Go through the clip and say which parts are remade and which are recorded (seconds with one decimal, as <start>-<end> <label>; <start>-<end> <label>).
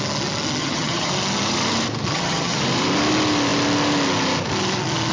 0.0-0.6 recorded; 0.6-1.1 remade; 1.1-2.1 recorded; 2.1-2.6 remade; 2.6-5.1 recorded